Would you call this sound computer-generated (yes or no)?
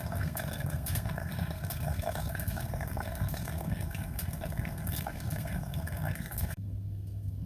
yes